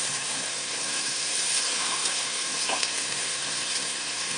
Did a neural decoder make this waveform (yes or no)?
yes